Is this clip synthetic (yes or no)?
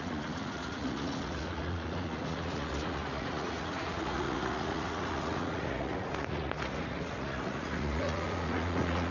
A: yes